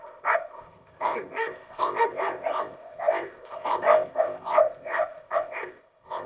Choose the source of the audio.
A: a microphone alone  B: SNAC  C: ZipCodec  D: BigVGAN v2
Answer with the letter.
C